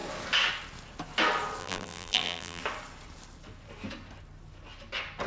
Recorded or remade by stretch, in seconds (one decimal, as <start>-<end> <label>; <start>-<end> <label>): 0.0-1.6 recorded; 1.6-2.6 remade; 2.6-5.3 recorded